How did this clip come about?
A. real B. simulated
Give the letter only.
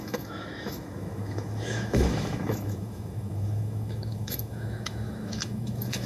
B